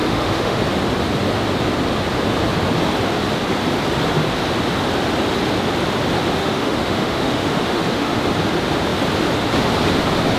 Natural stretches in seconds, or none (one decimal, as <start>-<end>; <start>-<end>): 0.6-6.4; 8.2-10.4